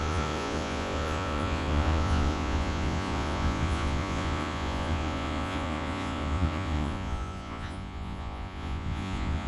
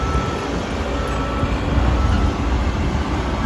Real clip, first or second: second